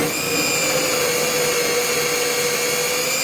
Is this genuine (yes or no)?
yes